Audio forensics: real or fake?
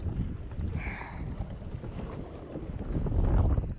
real